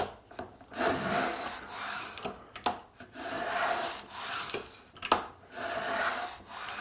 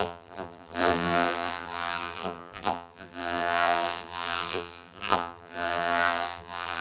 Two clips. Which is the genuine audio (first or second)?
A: first